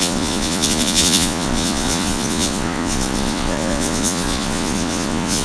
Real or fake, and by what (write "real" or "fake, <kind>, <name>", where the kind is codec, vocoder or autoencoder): fake, vocoder, Vocos